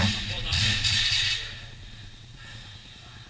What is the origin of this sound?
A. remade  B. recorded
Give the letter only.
A